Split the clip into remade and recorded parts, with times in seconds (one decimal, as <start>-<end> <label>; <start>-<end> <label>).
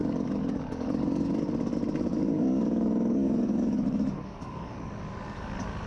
0.0-1.3 remade; 1.3-2.1 recorded; 2.1-5.9 remade